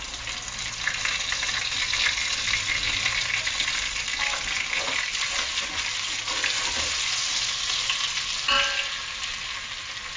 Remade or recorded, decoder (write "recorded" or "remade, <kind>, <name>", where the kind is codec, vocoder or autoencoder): recorded